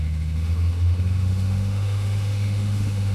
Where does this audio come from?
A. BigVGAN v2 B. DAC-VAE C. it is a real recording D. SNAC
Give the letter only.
B